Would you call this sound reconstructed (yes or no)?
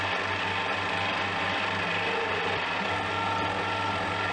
no